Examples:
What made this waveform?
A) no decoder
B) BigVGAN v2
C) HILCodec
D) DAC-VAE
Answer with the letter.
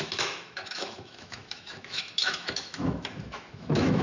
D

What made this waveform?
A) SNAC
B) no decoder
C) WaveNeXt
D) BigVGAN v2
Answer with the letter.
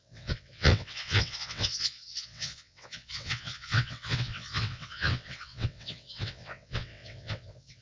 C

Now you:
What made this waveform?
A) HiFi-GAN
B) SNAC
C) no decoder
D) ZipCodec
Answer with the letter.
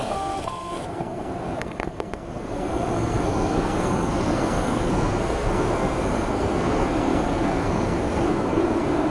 B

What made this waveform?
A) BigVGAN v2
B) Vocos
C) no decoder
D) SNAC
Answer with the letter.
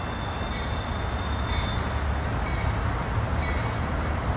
C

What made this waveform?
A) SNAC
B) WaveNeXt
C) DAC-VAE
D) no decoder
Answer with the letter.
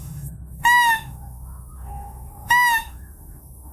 C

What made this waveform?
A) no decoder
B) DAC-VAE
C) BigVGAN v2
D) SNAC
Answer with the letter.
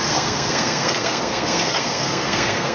D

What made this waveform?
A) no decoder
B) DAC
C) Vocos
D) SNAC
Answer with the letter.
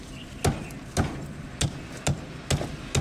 A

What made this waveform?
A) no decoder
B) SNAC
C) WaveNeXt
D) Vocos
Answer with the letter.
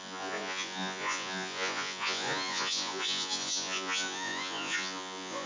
D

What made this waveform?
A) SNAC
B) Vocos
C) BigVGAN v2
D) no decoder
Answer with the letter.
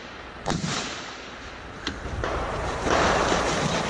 C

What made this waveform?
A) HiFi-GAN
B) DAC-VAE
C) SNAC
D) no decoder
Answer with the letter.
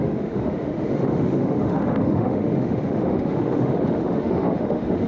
B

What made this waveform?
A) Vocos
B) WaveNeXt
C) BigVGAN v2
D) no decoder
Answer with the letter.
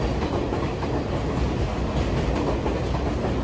D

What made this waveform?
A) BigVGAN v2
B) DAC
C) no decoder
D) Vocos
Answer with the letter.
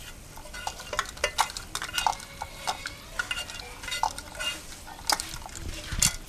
C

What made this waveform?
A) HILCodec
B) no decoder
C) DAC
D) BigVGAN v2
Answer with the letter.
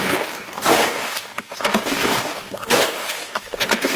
C